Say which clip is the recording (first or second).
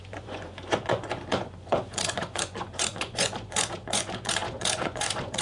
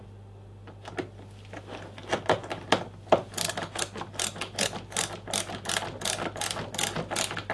second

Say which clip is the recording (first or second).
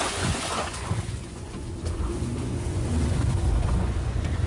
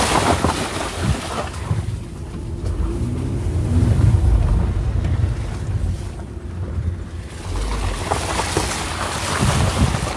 second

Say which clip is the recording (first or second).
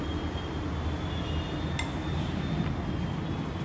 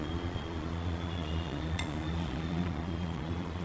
first